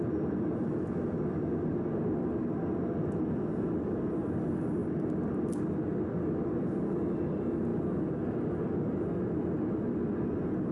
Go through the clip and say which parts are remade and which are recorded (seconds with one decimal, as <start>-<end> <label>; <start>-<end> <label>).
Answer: 0.0-4.8 recorded; 4.8-5.6 remade; 5.6-10.7 recorded